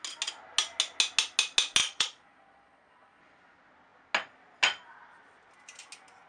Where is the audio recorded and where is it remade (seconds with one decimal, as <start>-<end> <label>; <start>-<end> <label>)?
0.0-1.8 recorded; 1.8-3.2 remade; 3.2-6.3 recorded